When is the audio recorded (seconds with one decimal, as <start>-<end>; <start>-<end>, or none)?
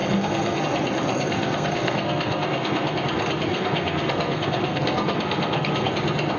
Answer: 0.6-1.1; 2.9-3.5; 5.9-6.4